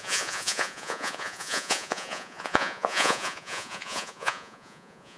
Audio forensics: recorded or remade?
remade